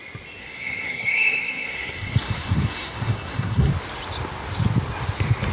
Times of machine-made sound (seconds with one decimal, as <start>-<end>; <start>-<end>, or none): 0.4-3.7